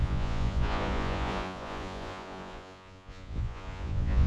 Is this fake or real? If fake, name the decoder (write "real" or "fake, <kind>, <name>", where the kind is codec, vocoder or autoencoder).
fake, vocoder, Vocos